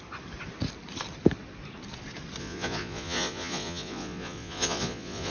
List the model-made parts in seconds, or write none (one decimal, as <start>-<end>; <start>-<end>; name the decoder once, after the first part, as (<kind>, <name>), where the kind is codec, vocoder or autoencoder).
2.4-5.3 (vocoder, Vocos)